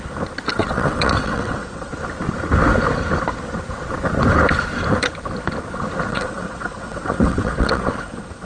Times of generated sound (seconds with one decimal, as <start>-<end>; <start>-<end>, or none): 0.5-1.9; 6.1-8.4